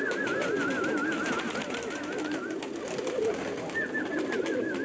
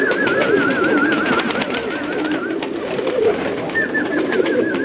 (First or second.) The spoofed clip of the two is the second